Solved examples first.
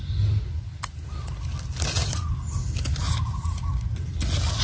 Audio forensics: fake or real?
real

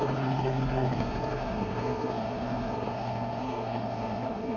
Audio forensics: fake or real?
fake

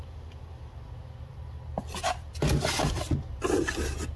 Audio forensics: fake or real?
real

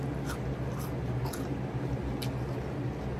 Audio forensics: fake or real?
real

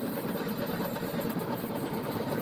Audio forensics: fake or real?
real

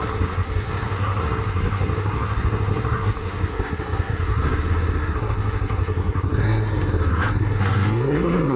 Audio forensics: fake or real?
fake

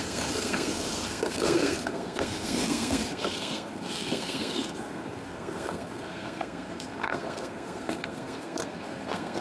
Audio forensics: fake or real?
fake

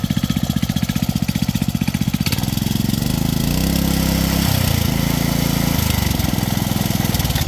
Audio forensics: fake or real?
real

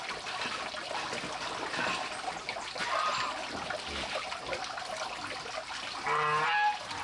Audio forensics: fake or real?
real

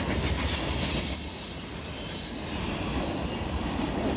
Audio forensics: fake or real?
real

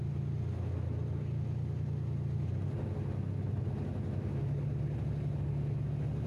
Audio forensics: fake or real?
real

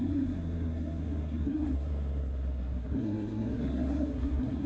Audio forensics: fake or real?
fake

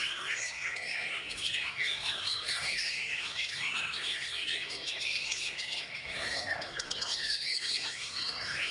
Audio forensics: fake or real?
fake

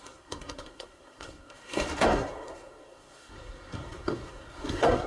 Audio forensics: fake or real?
fake